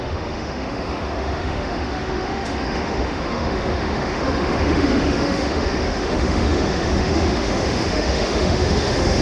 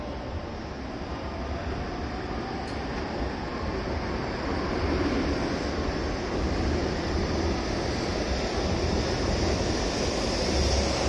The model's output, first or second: first